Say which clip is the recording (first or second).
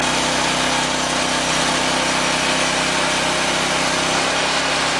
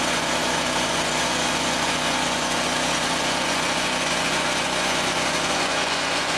first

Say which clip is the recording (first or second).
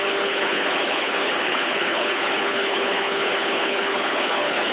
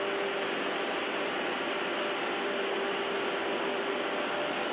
second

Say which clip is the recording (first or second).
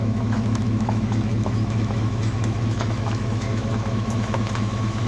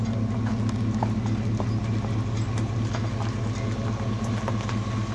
second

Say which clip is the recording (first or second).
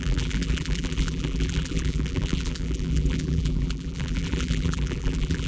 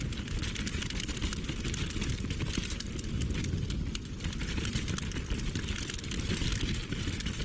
second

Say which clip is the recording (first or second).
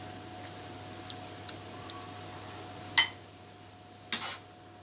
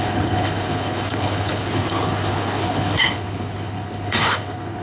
first